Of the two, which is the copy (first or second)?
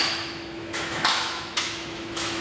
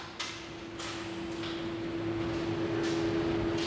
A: first